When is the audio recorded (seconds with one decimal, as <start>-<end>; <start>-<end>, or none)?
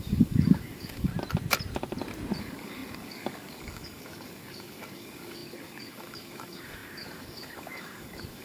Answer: 1.1-2.4